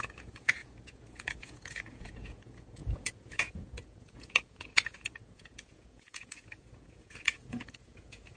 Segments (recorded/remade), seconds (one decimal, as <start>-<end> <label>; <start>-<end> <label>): 0.0-8.4 remade